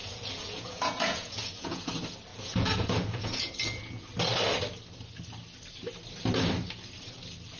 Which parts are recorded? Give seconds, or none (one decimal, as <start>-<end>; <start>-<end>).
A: 1.9-2.3; 3.5-7.6